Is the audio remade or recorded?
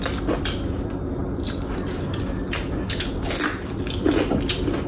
recorded